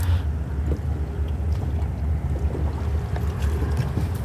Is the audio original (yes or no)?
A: yes